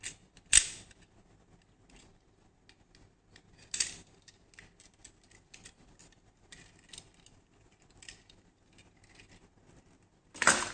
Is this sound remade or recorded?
recorded